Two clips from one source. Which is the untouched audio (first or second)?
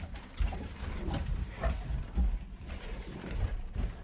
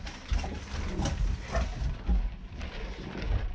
second